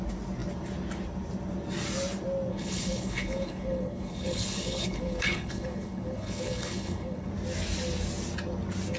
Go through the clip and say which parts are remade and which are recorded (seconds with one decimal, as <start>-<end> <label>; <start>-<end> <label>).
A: 0.0-2.5 recorded; 2.5-7.3 remade; 7.3-9.0 recorded

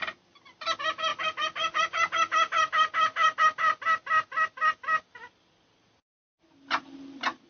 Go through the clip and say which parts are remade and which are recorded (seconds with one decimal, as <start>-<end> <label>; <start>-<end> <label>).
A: 0.0-1.1 recorded; 1.1-3.4 remade; 3.4-7.5 recorded

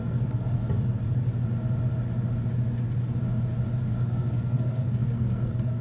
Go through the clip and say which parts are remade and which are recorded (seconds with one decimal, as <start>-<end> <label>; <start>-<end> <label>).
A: 0.0-0.6 remade; 0.6-3.8 recorded; 3.8-5.8 remade

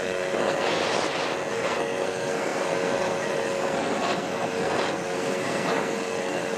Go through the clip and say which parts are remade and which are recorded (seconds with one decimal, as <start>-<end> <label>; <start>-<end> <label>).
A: 0.0-0.8 remade; 0.8-1.5 recorded; 1.5-6.6 remade

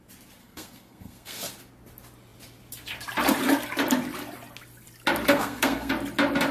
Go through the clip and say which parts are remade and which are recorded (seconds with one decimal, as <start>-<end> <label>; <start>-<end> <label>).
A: 0.0-0.4 recorded; 0.4-1.5 remade; 1.5-5.3 recorded; 5.3-5.9 remade; 5.9-6.5 recorded

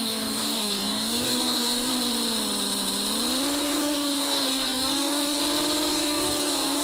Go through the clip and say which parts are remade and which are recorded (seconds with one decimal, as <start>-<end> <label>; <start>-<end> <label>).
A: 0.0-1.9 remade; 1.9-3.6 recorded; 3.6-5.4 remade; 5.4-5.9 recorded; 5.9-6.8 remade

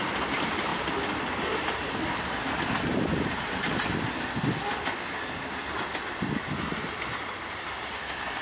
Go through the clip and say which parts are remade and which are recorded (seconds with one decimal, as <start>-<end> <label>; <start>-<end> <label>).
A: 0.0-0.7 recorded; 0.7-3.5 remade; 3.5-5.6 recorded; 5.6-6.2 remade; 6.2-8.4 recorded

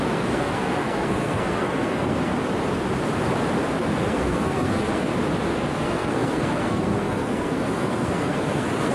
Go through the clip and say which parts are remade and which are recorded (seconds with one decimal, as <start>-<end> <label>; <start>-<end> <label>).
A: 0.0-2.3 remade; 2.3-3.8 recorded; 3.8-5.1 remade; 5.1-5.7 recorded; 5.7-8.9 remade